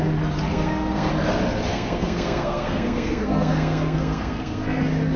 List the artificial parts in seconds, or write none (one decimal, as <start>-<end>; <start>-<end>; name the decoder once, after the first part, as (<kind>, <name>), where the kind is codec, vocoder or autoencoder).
0.5-1.1 (codec, SNAC); 1.7-4.8